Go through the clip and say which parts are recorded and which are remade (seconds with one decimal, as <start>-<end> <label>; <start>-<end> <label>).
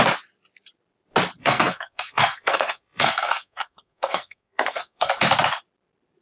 0.0-1.4 recorded; 1.4-5.1 remade; 5.1-6.2 recorded